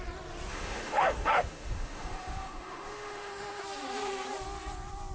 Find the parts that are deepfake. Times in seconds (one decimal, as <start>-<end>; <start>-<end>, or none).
0.5-3.6